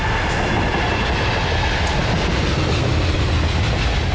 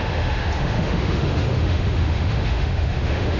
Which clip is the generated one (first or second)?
second